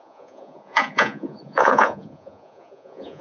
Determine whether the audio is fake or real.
fake